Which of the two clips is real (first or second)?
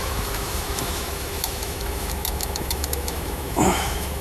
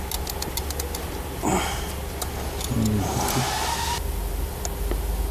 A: second